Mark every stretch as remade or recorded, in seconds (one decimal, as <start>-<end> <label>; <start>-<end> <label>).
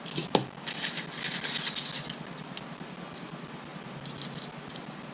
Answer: 0.0-0.4 recorded; 0.4-0.9 remade; 0.9-5.1 recorded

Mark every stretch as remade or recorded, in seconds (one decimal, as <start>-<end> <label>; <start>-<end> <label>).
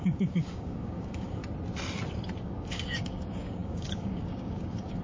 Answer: 0.0-1.4 remade; 1.4-2.4 recorded; 2.4-5.0 remade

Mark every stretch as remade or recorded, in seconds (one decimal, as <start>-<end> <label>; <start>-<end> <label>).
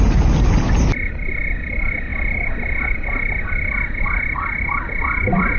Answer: 0.0-5.6 recorded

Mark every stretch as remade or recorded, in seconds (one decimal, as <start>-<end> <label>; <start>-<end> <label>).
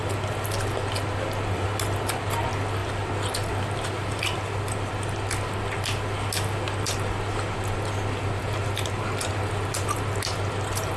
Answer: 0.0-11.0 recorded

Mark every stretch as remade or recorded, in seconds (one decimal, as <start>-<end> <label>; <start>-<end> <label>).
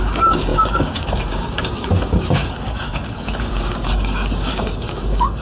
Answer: 0.0-5.4 remade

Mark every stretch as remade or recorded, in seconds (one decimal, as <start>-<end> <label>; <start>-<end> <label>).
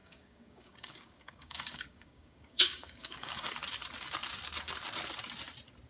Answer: 0.0-3.5 remade; 3.5-5.9 recorded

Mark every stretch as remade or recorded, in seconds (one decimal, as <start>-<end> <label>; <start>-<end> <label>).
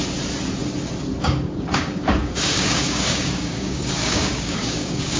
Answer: 0.0-1.2 recorded; 1.2-5.2 remade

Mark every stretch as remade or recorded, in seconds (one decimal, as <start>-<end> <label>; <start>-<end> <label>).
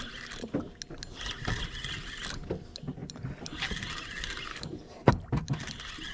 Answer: 0.0-4.5 recorded; 4.5-5.1 remade; 5.1-6.1 recorded